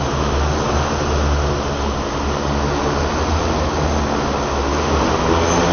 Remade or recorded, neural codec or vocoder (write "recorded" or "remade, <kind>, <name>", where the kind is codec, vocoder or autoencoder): recorded